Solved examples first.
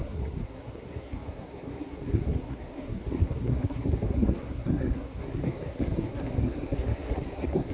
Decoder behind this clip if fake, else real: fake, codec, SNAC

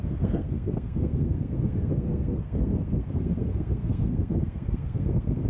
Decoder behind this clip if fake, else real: fake, codec, SNAC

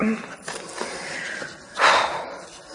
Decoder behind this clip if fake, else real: real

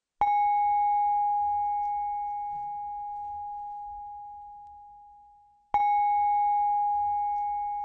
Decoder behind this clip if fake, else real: real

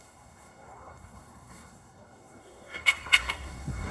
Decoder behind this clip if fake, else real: fake, codec, SNAC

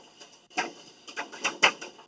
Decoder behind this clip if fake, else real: real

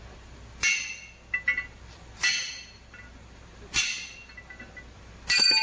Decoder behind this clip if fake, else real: real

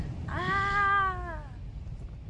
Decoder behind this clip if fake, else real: real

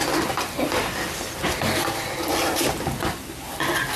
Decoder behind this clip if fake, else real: real